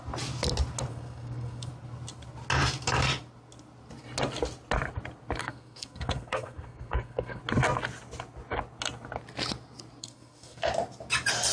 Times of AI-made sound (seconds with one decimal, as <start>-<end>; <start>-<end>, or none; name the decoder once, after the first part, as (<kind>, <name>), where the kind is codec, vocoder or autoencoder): 0.9-1.7 (codec, SNAC); 5.4-7.4; 10.0-10.7